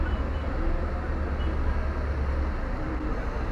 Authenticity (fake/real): real